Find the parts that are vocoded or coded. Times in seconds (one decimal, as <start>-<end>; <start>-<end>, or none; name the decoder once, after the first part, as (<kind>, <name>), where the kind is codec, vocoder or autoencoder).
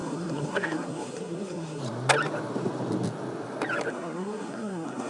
0.0-1.8 (codec, SNAC); 3.9-5.1